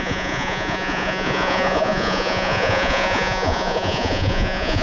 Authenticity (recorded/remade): remade